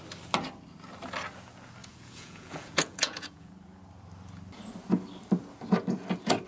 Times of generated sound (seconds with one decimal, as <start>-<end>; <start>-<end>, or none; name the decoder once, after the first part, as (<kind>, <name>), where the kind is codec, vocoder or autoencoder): 1.8-3.5 (vocoder, Vocos)